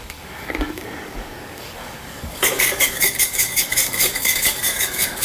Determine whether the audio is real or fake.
fake